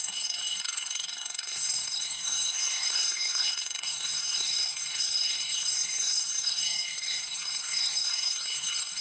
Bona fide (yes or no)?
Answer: no